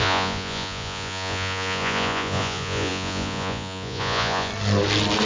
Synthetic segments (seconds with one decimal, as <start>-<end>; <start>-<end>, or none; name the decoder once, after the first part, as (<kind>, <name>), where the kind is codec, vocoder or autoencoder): 0.0-4.5 (vocoder, Vocos)